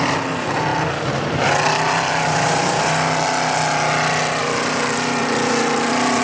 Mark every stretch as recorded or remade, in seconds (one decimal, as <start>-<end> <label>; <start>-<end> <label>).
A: 0.0-0.7 remade; 0.7-4.4 recorded; 4.4-6.2 remade